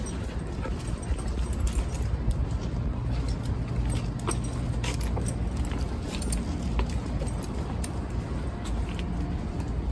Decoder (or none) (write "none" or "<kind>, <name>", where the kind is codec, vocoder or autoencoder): none